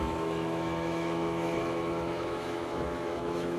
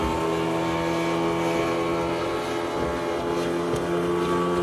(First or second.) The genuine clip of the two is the second